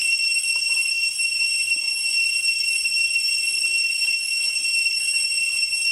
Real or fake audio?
real